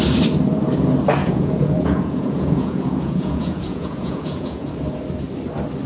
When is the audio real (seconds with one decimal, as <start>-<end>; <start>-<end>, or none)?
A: 0.0-1.2; 4.7-5.9